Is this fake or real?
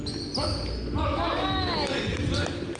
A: real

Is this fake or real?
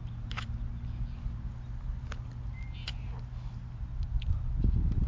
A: real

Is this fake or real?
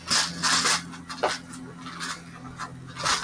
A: real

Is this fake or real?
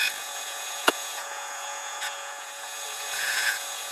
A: fake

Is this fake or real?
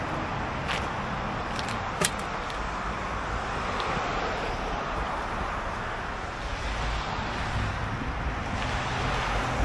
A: real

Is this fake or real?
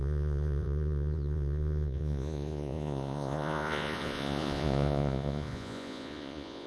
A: fake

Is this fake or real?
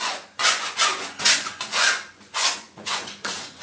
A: fake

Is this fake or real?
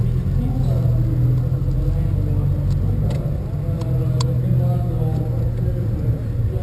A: real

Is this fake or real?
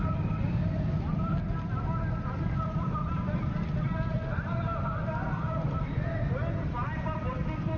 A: real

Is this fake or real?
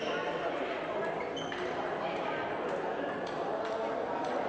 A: real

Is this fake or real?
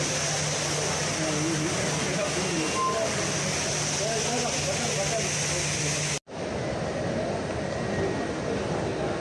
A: real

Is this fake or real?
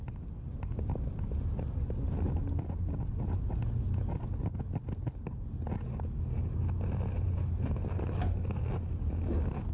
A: real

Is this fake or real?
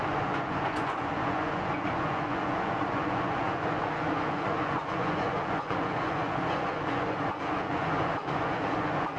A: fake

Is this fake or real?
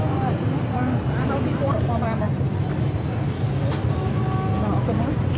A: real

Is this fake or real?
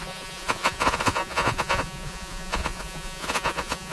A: fake